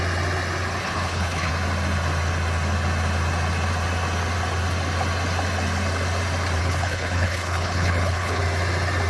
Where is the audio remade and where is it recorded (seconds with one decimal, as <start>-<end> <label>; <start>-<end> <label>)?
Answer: 0.0-0.8 recorded; 0.8-1.5 remade; 1.5-6.6 recorded; 6.6-8.4 remade; 8.4-9.1 recorded